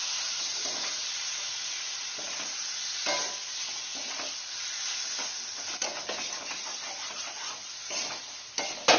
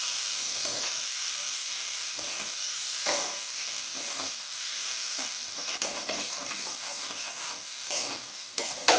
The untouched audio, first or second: first